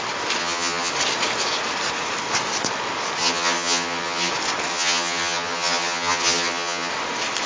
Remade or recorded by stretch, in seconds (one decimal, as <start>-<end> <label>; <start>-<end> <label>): 0.0-0.4 recorded; 0.4-0.9 remade; 0.9-3.2 recorded; 3.2-4.3 remade; 4.3-4.7 recorded; 4.7-6.9 remade; 6.9-7.5 recorded